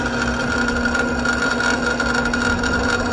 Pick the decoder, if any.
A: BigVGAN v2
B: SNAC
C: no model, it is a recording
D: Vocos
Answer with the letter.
C